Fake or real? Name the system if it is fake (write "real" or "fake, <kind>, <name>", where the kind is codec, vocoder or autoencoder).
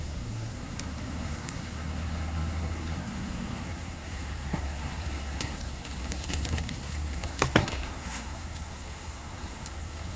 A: fake, codec, SNAC